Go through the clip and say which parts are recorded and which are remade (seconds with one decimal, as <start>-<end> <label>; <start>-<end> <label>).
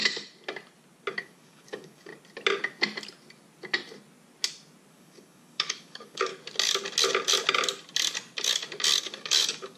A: 0.0-1.1 recorded; 1.1-2.1 remade; 2.1-4.9 recorded; 4.9-6.3 remade; 6.3-9.0 recorded; 9.0-9.8 remade